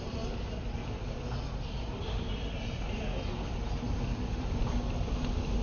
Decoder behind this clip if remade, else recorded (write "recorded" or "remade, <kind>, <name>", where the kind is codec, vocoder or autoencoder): recorded